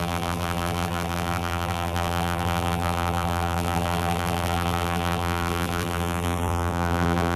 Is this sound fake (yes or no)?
yes